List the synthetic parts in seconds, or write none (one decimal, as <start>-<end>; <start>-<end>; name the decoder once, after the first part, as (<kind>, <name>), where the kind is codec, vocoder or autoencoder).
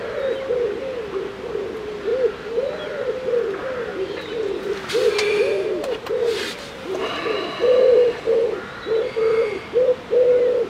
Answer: 2.1-3.4 (vocoder, BigVGAN v2); 3.9-4.6